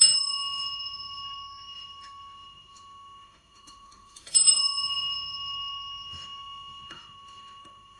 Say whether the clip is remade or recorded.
remade